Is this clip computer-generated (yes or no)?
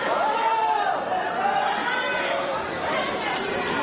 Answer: no